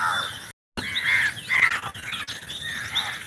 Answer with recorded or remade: recorded